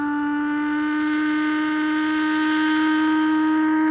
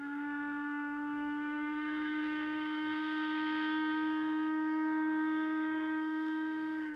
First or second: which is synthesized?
second